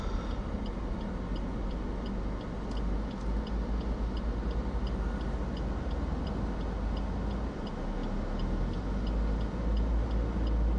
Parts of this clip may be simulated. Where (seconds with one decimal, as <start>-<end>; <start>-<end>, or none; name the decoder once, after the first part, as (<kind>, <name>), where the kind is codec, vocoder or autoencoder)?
none